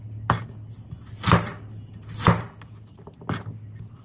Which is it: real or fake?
real